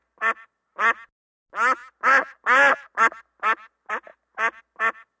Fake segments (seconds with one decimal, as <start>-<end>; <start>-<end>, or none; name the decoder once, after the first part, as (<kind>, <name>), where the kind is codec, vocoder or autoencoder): none